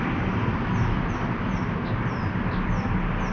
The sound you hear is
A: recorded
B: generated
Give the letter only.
A